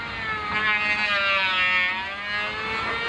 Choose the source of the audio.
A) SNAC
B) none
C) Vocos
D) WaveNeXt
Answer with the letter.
B